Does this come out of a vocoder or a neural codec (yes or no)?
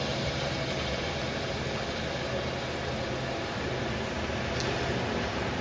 no